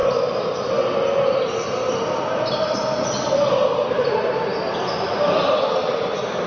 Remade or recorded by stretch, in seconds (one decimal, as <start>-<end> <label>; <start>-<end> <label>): 0.0-6.5 recorded